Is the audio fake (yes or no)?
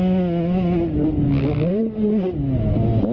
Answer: no